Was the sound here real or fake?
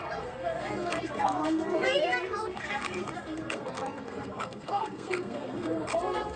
fake